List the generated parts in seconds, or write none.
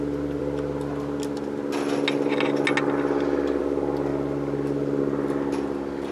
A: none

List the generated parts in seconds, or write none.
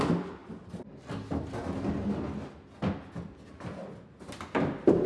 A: none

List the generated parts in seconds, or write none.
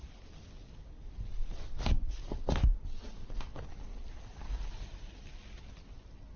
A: none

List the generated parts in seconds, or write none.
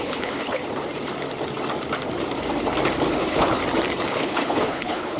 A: 0.0-0.6 (codec, HILCodec); 3.2-3.6; 4.1-5.2